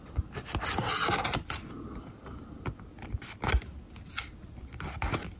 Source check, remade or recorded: recorded